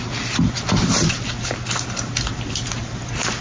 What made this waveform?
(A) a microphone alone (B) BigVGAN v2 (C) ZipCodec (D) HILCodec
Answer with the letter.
A